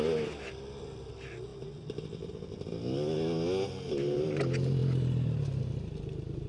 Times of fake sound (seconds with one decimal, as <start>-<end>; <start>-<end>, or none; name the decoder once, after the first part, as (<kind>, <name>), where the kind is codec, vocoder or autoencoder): none